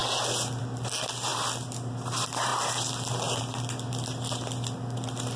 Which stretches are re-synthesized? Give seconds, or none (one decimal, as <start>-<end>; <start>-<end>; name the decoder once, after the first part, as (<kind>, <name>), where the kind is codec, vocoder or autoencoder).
none